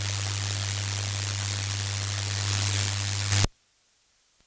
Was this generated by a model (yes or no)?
no